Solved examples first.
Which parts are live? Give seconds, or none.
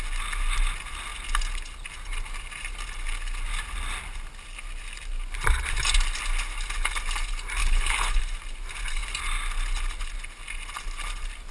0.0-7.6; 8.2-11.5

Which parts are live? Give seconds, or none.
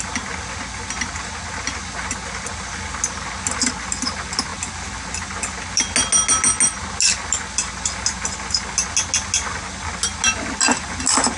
0.0-11.4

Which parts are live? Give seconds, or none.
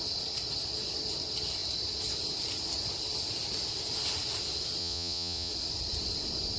0.0-4.8; 5.5-6.6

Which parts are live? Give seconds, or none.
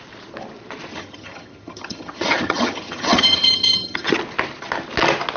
0.0-0.9; 4.1-5.4